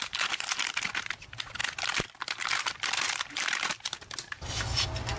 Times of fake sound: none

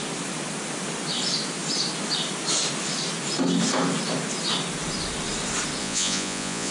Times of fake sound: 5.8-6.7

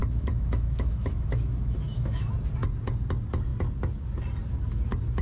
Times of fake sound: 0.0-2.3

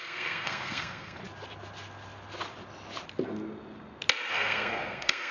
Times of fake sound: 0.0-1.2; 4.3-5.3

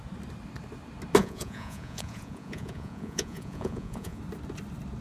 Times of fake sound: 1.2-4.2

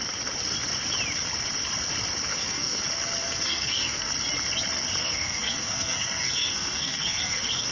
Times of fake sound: 2.3-2.8; 3.2-4.1; 5.0-7.7

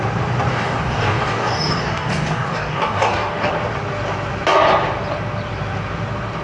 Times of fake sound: 0.5-3.5